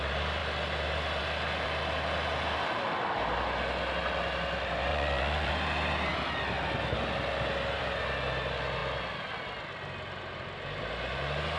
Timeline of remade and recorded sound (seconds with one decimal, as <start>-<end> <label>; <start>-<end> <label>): 0.0-4.9 recorded; 4.9-5.5 remade; 5.5-11.6 recorded